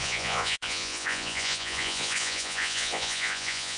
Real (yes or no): no